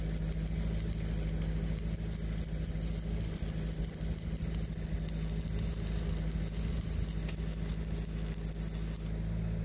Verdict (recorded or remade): recorded